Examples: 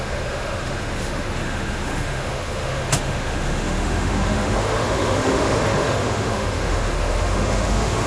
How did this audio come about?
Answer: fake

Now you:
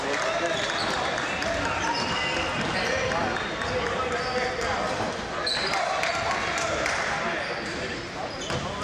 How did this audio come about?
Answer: real